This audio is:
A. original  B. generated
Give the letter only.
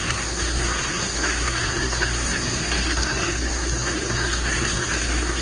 B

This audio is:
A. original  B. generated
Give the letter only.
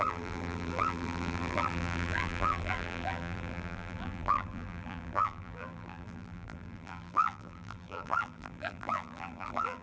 B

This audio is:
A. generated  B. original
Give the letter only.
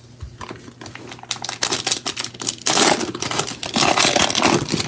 B